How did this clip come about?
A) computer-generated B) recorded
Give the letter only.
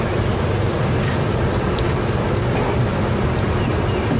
B